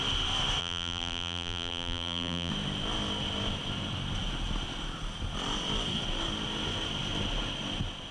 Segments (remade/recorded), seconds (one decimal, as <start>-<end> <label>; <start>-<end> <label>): 0.0-0.6 recorded; 0.6-2.5 remade; 2.5-8.1 recorded